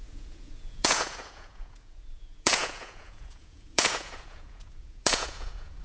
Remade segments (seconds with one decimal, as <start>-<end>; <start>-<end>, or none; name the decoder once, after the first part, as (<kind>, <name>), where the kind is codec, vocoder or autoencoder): 0.0-5.8 (vocoder, Vocos)